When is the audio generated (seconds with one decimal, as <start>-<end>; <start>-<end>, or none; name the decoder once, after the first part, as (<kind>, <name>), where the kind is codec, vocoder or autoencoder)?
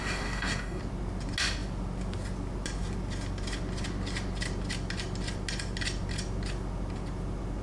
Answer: 0.0-0.8 (codec, DAC)